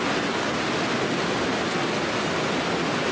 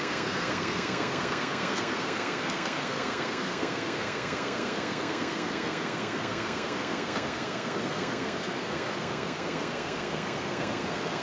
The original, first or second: first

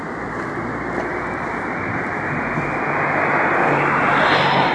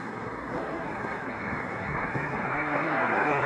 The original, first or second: first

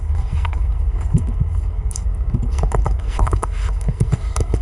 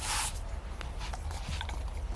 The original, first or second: second